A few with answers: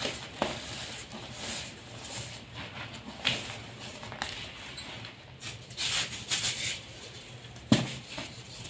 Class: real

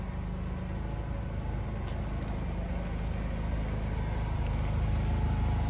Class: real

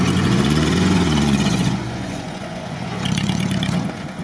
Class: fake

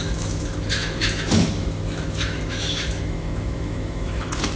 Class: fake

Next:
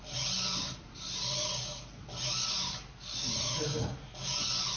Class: real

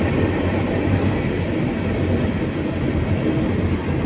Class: real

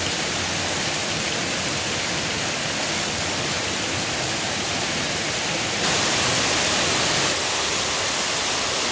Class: real